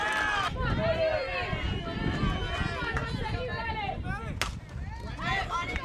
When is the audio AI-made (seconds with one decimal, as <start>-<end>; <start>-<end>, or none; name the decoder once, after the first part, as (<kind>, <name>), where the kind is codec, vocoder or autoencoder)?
none